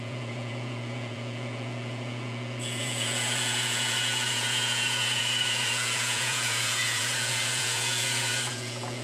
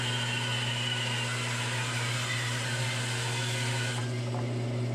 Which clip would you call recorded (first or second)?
second